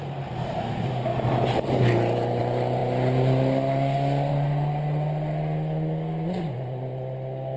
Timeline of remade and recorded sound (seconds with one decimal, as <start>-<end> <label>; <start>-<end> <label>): 0.0-7.6 recorded